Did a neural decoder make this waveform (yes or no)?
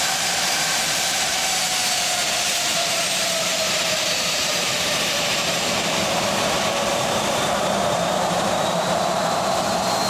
yes